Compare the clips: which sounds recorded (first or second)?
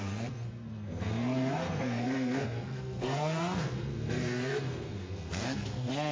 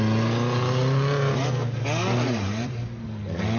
second